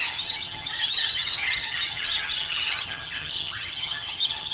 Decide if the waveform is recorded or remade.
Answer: remade